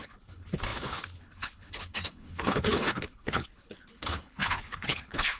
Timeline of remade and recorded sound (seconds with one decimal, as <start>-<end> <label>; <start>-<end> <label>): 0.0-5.4 remade